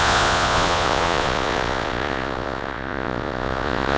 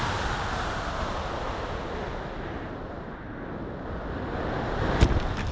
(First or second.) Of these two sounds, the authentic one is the second